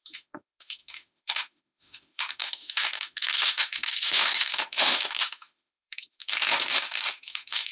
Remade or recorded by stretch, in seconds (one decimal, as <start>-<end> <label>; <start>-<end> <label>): 0.0-7.7 remade